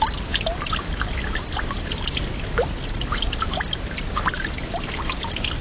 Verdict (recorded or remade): recorded